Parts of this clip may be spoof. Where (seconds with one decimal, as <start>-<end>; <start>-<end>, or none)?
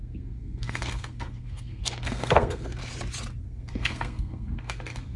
0.0-2.8; 3.4-5.2